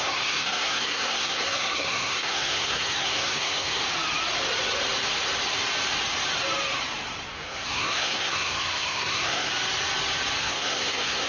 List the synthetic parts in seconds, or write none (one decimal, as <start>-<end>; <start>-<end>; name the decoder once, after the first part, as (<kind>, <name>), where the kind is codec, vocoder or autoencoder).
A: 0.0-3.9 (codec, SNAC); 7.3-9.5; 10.4-11.3